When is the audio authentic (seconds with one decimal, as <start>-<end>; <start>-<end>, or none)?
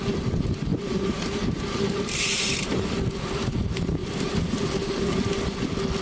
0.0-0.7; 2.7-4.0; 5.1-6.0